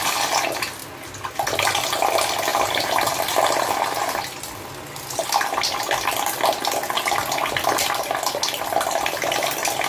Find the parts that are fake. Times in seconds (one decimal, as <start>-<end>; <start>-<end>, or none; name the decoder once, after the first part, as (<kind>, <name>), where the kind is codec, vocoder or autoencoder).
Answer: 2.5-3.7 (vocoder, BigVGAN v2)